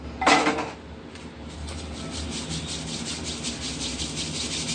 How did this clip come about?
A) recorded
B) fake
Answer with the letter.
A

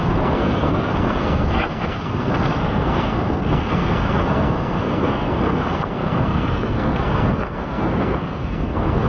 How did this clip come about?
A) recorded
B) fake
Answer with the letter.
B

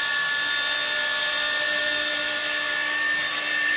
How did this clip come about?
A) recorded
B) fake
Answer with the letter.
A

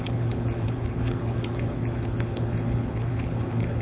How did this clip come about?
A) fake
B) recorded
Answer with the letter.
A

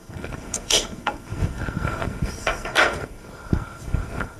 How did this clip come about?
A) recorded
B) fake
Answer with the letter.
B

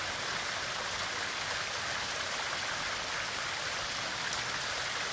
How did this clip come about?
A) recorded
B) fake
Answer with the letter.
A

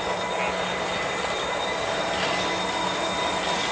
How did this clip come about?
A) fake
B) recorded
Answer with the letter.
B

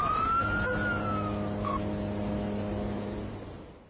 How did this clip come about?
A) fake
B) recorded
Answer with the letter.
B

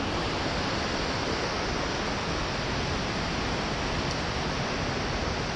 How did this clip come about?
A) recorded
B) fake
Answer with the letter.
A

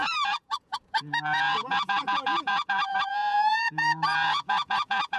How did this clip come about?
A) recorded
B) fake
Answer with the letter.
B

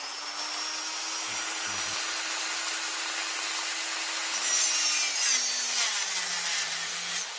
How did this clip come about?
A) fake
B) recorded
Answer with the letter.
B